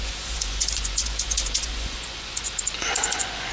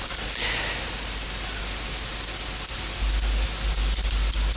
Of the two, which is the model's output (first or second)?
first